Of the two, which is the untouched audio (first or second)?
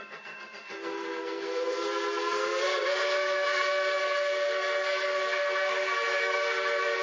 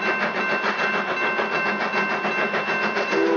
second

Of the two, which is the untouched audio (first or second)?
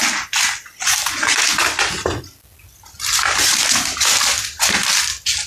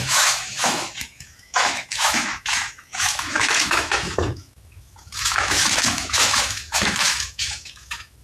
first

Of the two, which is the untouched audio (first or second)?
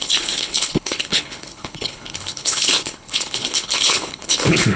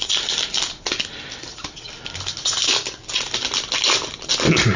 second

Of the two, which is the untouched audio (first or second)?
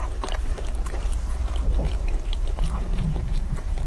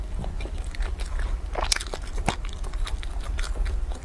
second